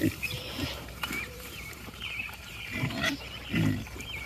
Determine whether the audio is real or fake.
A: fake